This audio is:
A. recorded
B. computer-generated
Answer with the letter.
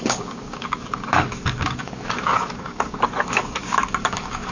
B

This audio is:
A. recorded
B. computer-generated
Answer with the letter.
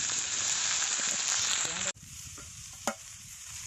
B